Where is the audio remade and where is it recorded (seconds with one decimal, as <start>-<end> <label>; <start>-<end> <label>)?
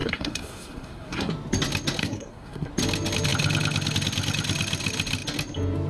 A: 0.0-1.3 remade; 1.3-2.0 recorded; 2.0-2.7 remade; 2.7-5.9 recorded